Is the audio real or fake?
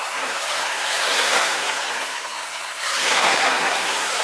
fake